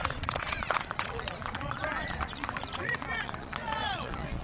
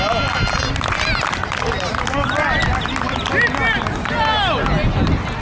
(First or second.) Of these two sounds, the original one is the second